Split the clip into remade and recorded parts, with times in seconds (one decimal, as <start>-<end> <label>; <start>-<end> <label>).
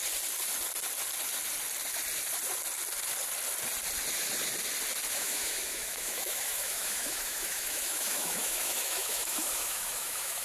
0.0-5.1 recorded; 5.1-10.4 remade